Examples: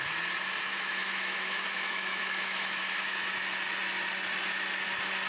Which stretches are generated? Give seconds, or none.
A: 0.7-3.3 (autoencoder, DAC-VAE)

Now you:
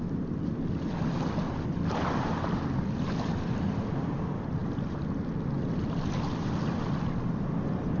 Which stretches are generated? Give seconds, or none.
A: none

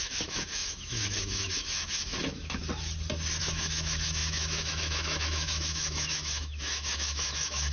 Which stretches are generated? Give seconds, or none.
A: 0.0-2.6 (autoencoder, DAC-VAE); 3.4-7.7

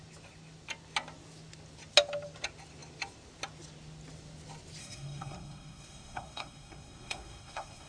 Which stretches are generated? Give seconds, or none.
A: 4.8-7.9 (codec, SNAC)

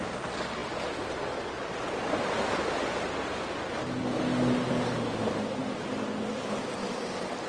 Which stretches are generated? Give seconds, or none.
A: none

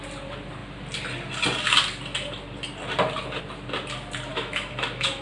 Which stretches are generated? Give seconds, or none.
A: 4.3-5.2 (autoencoder, DAC-VAE)

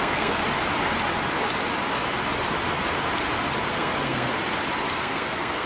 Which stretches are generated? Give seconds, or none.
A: 0.0-0.4 (codec, SNAC); 3.7-4.3; 4.8-5.7

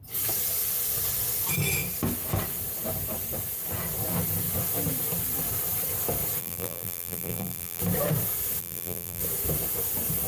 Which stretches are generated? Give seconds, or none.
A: 6.4-7.8 (vocoder, BigVGAN v2); 8.6-9.2